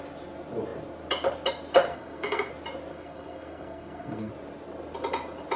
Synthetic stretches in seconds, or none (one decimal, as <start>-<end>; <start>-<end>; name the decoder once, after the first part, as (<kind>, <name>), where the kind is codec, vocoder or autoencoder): 1.9-2.5 (codec, SNAC); 2.9-4.3